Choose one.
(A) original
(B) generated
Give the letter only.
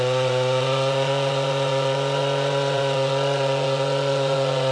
B